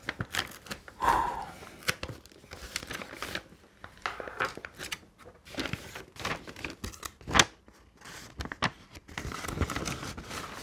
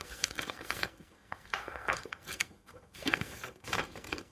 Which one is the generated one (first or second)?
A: second